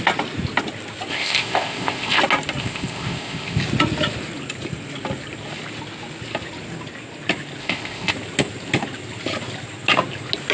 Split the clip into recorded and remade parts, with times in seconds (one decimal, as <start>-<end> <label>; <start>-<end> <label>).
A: 0.0-1.1 recorded; 1.1-2.2 remade; 2.2-2.6 recorded; 2.6-3.6 remade; 3.6-7.6 recorded; 7.6-8.1 remade; 8.1-10.5 recorded